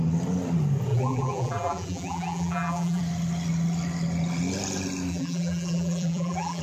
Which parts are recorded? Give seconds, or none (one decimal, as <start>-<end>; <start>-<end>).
0.0-0.9; 3.0-5.1